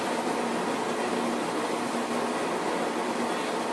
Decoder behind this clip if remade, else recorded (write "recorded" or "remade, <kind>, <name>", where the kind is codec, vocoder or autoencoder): recorded